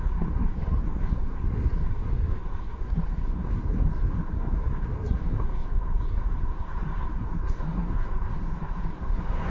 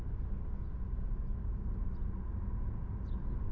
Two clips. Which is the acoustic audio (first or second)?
second